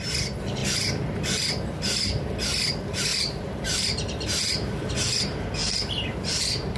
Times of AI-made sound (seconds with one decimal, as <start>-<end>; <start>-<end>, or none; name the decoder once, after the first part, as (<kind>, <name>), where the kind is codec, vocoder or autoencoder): 3.1-4.9 (vocoder, BigVGAN v2); 5.6-6.8